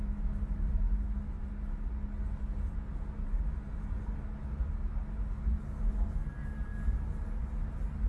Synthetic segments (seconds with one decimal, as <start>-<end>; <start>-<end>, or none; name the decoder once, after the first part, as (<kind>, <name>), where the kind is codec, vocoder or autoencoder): none